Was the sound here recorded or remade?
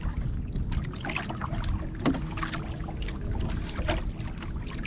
recorded